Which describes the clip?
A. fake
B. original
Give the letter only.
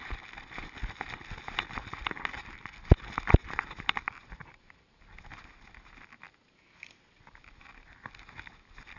B